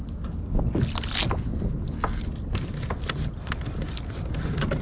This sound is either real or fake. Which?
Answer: real